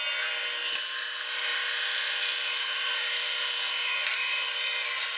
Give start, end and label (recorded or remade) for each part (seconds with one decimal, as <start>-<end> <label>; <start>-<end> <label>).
0.0-5.2 recorded